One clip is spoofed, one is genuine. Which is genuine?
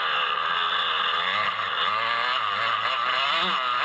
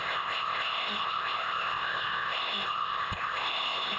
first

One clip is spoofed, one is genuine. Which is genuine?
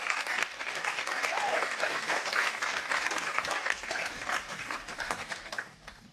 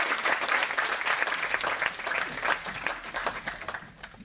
second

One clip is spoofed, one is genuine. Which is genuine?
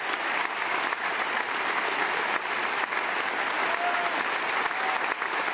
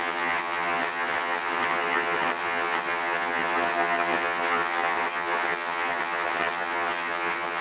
first